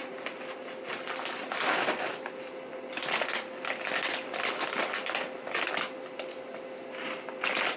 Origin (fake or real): real